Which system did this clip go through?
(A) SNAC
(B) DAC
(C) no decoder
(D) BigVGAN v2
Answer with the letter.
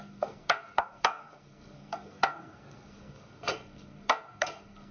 A